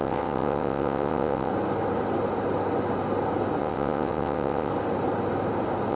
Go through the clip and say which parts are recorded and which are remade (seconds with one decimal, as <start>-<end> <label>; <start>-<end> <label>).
0.0-1.5 remade; 1.5-3.6 recorded; 3.6-4.7 remade; 4.7-5.9 recorded